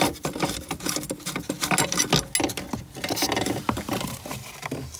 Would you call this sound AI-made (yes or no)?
no